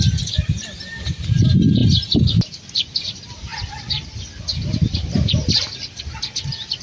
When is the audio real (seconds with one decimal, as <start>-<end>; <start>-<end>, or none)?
0.0-6.8